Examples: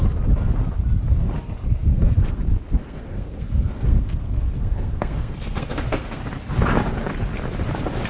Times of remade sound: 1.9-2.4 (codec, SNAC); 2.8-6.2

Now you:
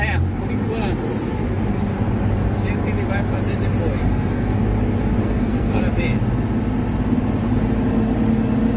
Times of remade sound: 4.0-4.6 (codec, SNAC); 5.2-5.8

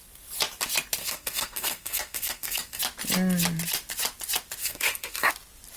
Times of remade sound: 1.0-2.8 (codec, SNAC); 4.6-5.3